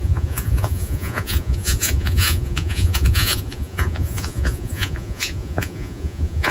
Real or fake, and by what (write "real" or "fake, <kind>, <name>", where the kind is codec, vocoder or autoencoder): fake, vocoder, Vocos